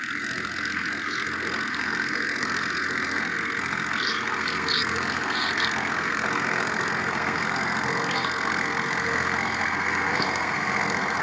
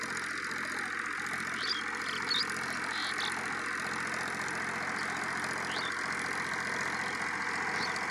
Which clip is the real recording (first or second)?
second